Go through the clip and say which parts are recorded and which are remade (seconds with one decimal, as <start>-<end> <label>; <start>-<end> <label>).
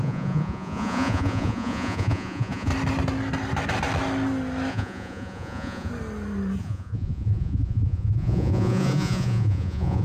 0.0-2.7 remade; 2.7-4.7 recorded; 4.7-5.9 remade; 5.9-6.6 recorded; 6.6-10.0 remade